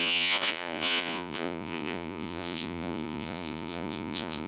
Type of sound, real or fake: fake